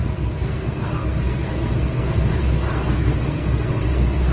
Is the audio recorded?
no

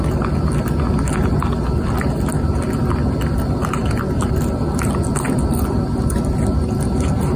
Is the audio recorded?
yes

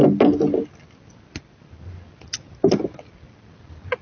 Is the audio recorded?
yes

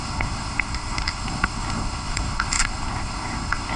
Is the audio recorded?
no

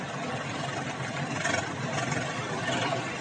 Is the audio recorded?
yes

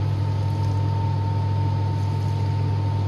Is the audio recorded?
yes